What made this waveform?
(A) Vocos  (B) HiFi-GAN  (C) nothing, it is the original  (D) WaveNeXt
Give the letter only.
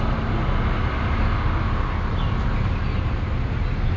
C